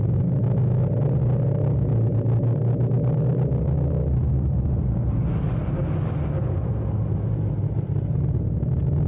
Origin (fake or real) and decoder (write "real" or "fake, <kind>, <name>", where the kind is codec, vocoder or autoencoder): real